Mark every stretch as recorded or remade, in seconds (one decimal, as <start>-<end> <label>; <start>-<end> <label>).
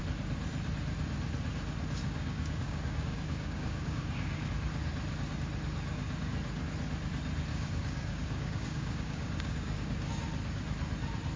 0.0-2.0 recorded; 2.0-4.5 remade; 4.5-7.5 recorded; 7.5-10.1 remade; 10.1-11.4 recorded